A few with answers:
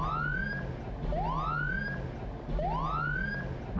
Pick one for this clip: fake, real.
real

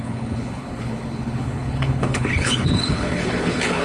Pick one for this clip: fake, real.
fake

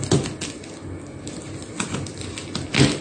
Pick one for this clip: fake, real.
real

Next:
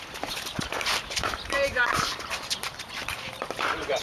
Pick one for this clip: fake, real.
fake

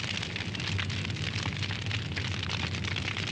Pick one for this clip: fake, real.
real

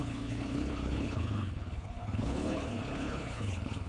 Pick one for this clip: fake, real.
fake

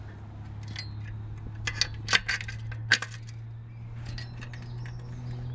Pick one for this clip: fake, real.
real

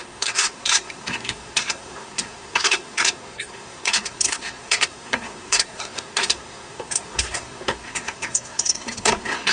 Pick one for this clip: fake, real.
fake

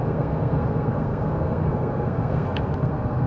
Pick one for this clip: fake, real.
fake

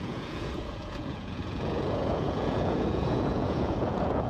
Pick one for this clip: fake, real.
fake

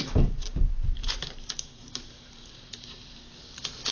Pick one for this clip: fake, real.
fake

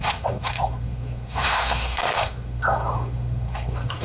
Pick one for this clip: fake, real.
fake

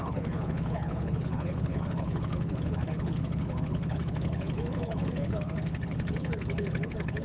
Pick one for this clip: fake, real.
fake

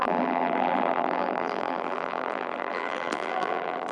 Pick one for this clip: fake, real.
fake